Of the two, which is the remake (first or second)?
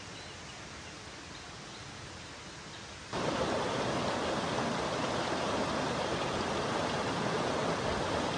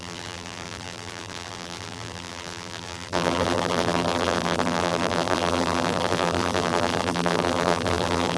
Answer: second